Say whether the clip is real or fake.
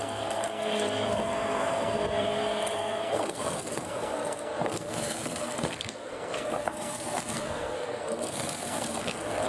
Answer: fake